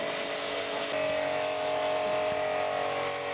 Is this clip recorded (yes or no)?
yes